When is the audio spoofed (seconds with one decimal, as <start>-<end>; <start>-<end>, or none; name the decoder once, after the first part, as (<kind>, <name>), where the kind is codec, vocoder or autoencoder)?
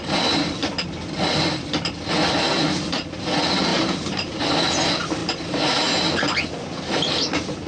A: 3.7-4.4 (vocoder, BigVGAN v2)